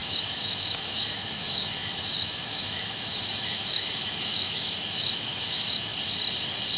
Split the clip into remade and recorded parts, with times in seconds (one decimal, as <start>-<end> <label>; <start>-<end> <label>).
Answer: 0.0-5.9 remade; 5.9-6.8 recorded